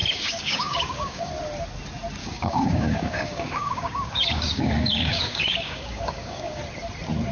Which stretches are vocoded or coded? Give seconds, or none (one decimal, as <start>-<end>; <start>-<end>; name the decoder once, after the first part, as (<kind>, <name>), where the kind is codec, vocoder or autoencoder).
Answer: 0.0-1.3 (codec, DAC); 2.2-6.6